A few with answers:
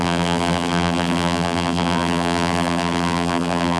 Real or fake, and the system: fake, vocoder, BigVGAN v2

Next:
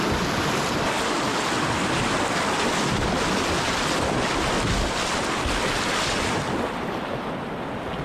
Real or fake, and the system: real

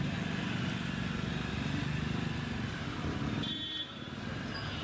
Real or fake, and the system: real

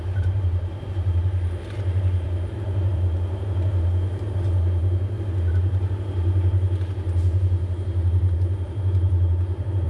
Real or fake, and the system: fake, vocoder, BigVGAN v2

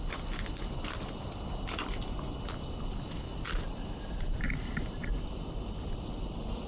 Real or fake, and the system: fake, vocoder, BigVGAN v2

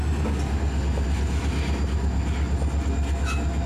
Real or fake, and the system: real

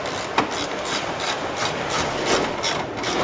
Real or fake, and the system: fake, vocoder, BigVGAN v2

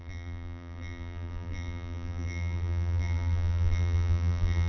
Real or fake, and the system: fake, vocoder, BigVGAN v2